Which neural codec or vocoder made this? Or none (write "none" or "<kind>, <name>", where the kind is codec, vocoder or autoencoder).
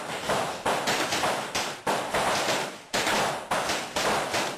vocoder, BigVGAN v2